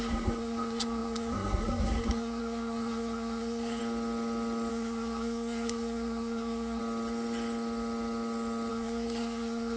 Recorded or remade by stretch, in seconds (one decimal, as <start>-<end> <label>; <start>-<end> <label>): 0.0-3.8 remade; 3.8-4.7 recorded; 4.7-6.8 remade; 6.8-8.7 recorded; 8.7-9.8 remade